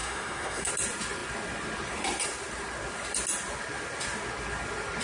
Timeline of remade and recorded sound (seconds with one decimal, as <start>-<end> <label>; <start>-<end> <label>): 0.0-0.7 remade; 0.7-5.0 recorded